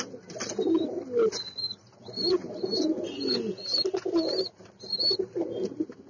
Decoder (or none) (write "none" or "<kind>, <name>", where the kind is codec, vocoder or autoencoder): none